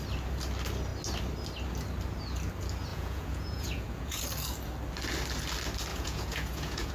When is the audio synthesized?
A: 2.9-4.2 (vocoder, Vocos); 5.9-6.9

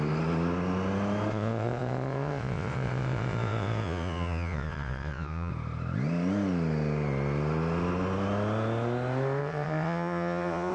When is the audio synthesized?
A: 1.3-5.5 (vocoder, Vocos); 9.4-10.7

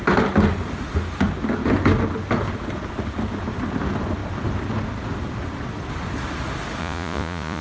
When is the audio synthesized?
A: 6.8-7.6 (vocoder, Vocos)

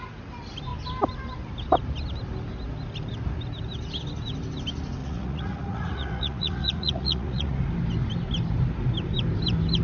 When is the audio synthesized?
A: 5.0-7.6 (vocoder, Vocos)

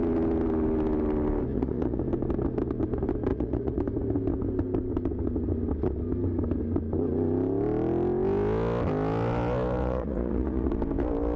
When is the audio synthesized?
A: 1.5-2.0 (vocoder, Vocos); 3.3-3.8; 9.8-10.7

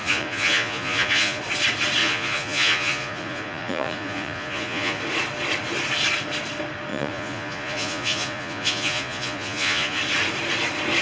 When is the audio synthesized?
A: 0.0-1.4 (vocoder, Vocos); 2.0-5.0; 6.9-10.0